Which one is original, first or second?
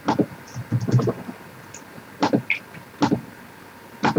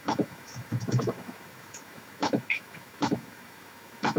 first